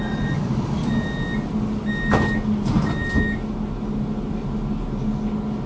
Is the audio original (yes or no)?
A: yes